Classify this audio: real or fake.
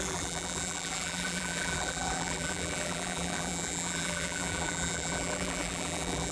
fake